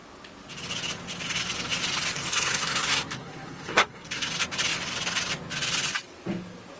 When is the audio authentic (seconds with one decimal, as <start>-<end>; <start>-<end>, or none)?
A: 0.0-2.3; 4.3-6.8